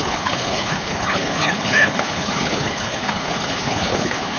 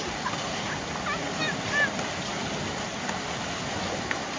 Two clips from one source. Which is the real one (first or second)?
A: second